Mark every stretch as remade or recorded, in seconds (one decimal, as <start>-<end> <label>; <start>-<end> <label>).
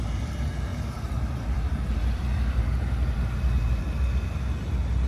0.0-0.7 recorded; 0.7-3.8 remade; 3.8-5.1 recorded